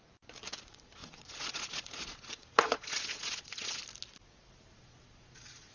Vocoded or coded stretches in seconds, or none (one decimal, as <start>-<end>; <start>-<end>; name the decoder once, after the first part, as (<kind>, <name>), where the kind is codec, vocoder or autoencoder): 0.6-3.8 (vocoder, Vocos); 4.7-5.7